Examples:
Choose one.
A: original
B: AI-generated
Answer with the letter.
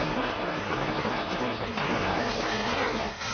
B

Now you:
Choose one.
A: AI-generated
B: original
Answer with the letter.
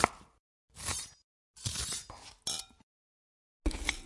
B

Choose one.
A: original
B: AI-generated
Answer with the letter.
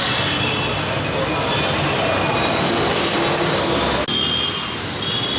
A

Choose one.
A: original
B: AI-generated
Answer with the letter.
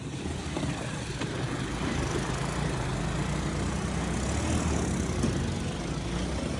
A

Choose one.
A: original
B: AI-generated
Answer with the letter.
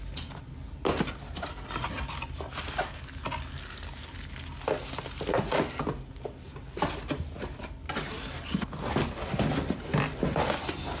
A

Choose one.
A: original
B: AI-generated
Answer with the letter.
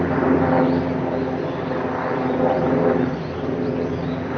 A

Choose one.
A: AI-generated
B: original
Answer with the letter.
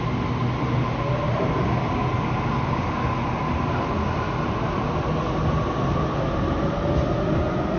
B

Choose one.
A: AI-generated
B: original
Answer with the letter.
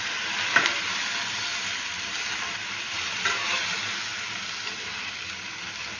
A